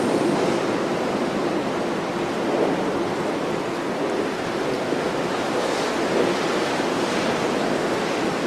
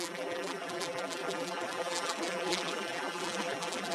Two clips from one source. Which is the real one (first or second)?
first